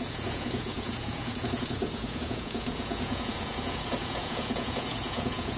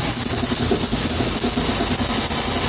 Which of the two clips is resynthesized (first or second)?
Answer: first